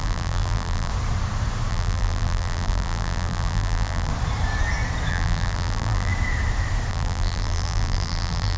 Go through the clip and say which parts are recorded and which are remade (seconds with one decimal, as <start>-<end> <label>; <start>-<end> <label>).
0.0-0.9 remade; 0.9-1.7 recorded; 1.7-4.1 remade; 4.1-5.1 recorded; 5.1-6.1 remade; 6.1-6.9 recorded; 6.9-8.6 remade